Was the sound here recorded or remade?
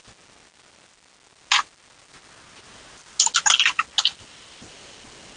recorded